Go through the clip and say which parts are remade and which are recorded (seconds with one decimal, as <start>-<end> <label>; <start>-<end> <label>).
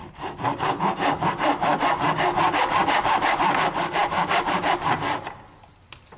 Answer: 0.0-0.8 remade; 0.8-6.2 recorded